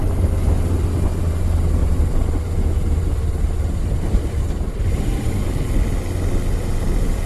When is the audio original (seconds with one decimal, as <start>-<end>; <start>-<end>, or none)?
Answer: 0.0-1.8; 5.4-7.3